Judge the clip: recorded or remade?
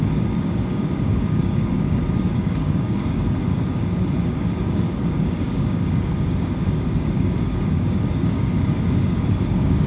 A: remade